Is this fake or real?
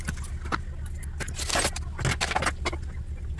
real